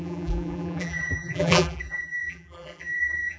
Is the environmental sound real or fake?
fake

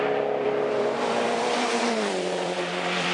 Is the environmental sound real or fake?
fake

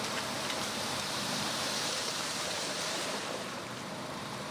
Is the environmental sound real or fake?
fake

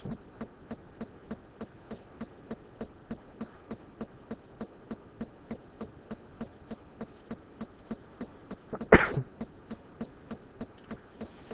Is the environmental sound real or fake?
fake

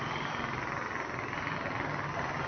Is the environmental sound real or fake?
real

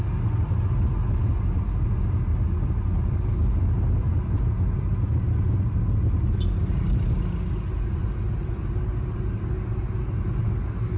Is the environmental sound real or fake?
real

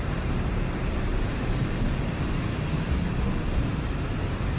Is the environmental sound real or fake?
fake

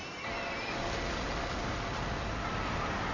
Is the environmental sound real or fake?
real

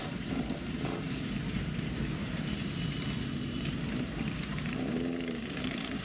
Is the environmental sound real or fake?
fake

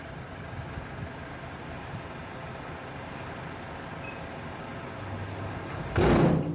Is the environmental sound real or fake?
real